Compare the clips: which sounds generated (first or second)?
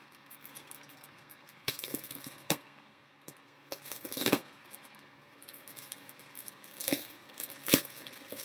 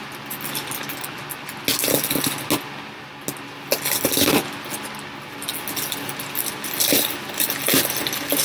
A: first